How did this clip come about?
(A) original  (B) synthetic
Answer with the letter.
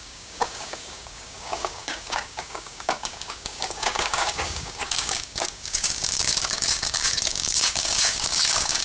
B